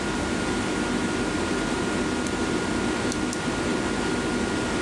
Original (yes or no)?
yes